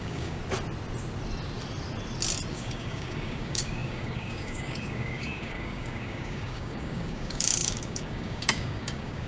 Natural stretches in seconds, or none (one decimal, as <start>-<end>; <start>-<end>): 0.4-2.5